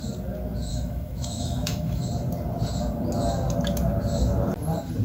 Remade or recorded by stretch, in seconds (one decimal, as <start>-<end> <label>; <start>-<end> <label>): 0.0-0.7 recorded; 0.7-2.1 remade; 2.1-5.0 recorded